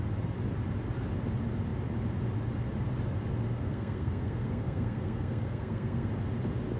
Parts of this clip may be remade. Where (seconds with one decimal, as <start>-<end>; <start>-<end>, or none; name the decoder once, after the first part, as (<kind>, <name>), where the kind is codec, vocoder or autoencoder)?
3.6-6.1 (codec, SNAC)